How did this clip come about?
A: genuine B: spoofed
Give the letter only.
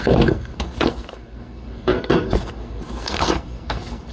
B